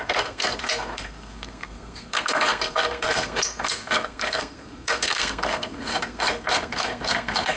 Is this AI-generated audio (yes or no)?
yes